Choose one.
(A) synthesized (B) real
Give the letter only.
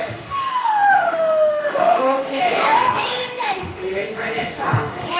A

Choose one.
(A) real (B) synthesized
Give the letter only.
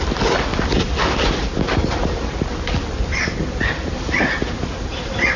A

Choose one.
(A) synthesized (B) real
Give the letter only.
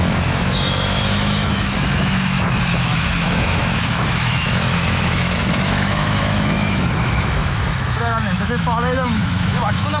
A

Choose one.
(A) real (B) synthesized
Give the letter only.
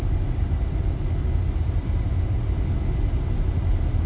A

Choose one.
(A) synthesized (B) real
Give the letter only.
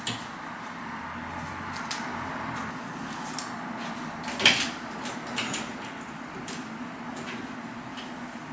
B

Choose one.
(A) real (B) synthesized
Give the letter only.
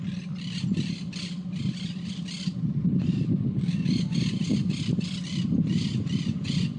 A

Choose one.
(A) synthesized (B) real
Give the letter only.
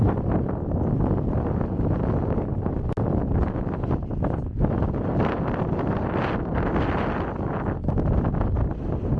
B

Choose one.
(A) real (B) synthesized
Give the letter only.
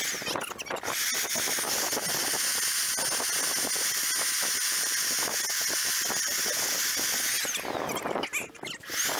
A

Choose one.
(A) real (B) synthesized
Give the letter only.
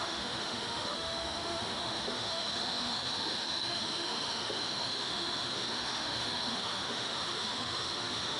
B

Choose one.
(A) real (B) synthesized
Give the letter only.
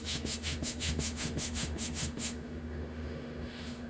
B